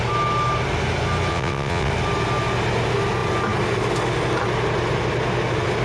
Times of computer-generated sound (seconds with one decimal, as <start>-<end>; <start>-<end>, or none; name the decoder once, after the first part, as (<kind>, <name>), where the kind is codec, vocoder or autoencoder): 1.3-1.9 (vocoder, WaveNeXt)